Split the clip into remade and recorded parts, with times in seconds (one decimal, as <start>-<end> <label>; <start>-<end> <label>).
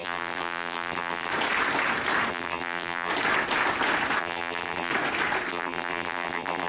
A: 0.0-1.3 remade; 1.3-2.3 recorded; 2.3-3.1 remade; 3.1-4.2 recorded; 4.2-4.9 remade; 4.9-5.5 recorded; 5.5-6.7 remade